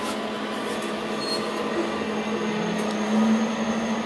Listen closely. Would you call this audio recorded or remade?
recorded